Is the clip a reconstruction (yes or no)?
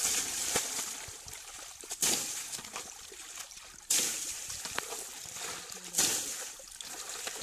no